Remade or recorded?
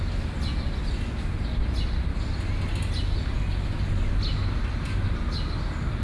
recorded